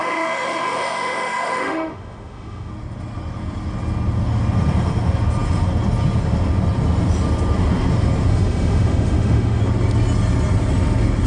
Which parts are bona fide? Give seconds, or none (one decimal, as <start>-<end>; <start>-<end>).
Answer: 2.7-8.3; 9.6-11.3